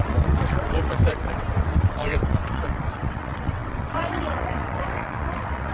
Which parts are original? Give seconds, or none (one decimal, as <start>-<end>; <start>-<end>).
none